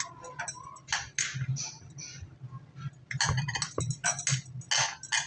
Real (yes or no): yes